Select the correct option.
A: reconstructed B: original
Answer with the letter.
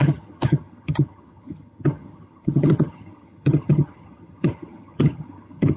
A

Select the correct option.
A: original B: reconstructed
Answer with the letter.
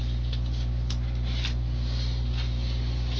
A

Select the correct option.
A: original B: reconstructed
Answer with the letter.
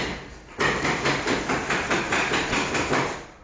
A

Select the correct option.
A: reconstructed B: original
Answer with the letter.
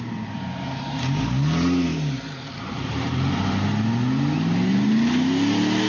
B